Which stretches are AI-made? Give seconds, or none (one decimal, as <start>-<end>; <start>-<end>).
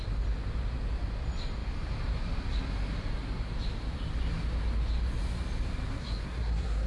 5.9-6.9